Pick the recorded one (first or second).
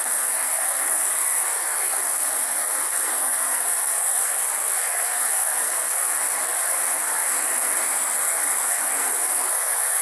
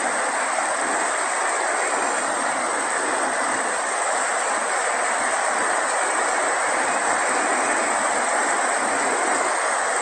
second